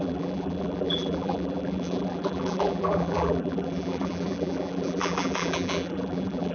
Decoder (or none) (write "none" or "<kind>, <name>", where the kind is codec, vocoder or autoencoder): vocoder, BigVGAN v2